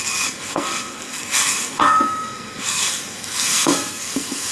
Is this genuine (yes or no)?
no